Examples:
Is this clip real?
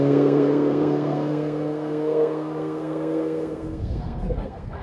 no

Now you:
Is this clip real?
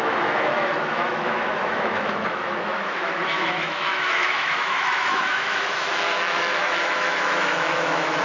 no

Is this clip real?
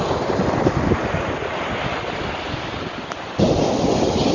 yes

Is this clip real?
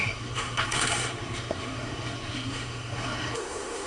no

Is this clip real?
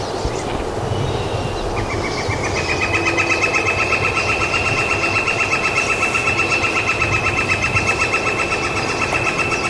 yes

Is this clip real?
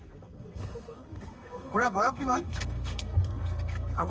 no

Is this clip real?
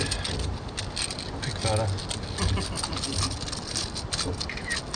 yes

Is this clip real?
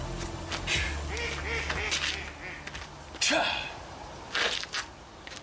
yes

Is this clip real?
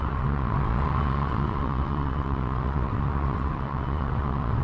no